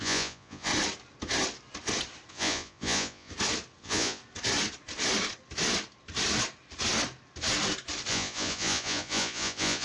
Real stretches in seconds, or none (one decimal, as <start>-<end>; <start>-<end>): 0.7-2.3; 3.3-3.8; 4.2-8.1